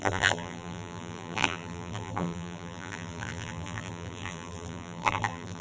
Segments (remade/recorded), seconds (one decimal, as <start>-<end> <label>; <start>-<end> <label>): 0.0-5.6 remade